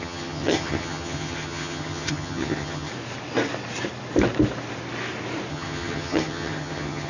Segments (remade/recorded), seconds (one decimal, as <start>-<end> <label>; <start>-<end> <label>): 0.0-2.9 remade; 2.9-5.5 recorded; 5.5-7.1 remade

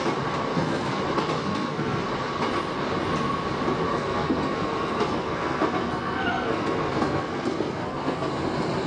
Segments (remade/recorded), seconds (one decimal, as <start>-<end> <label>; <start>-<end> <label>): 0.0-0.5 recorded; 0.5-1.0 remade; 1.0-1.4 recorded; 1.4-2.0 remade; 2.0-3.9 recorded; 3.9-8.3 remade; 8.3-8.9 recorded

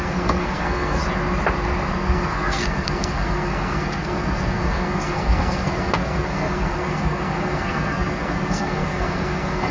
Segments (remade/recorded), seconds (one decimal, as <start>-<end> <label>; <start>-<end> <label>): 0.0-1.0 remade; 1.0-1.9 recorded; 1.9-9.7 remade

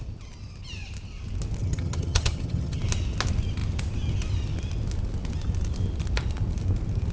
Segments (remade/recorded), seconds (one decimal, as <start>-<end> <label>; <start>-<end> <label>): 0.0-1.6 recorded; 1.6-2.8 remade; 2.8-7.1 recorded

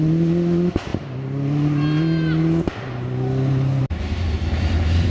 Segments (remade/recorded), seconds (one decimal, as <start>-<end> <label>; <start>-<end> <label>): 0.0-5.1 recorded